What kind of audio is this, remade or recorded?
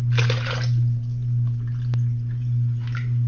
recorded